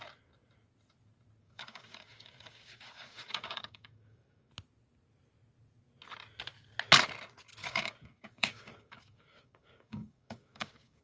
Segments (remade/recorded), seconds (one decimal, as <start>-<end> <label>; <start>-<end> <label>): 0.0-1.4 recorded; 1.4-4.5 remade; 4.5-7.6 recorded; 7.6-11.0 remade

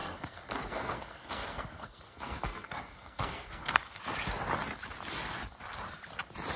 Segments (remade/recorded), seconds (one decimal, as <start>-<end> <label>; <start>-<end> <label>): 0.0-4.0 remade; 4.0-6.6 recorded

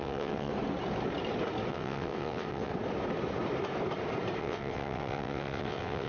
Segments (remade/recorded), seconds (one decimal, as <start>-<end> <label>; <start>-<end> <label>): 0.0-0.5 remade; 0.5-1.7 recorded; 1.7-2.7 remade; 2.7-4.4 recorded; 4.4-6.1 remade

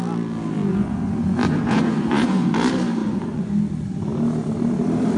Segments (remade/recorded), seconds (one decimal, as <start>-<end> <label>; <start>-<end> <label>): 0.0-0.7 recorded; 0.7-2.5 remade; 2.5-3.0 recorded; 3.0-3.5 remade; 3.5-5.2 recorded

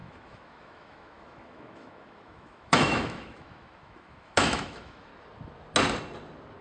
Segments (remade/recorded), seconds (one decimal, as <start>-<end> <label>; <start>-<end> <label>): 0.0-5.1 remade; 5.1-6.6 recorded

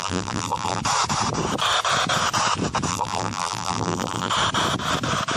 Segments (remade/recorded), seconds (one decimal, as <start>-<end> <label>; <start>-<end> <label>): 0.0-0.8 remade; 0.8-2.9 recorded; 2.9-4.3 remade; 4.3-5.4 recorded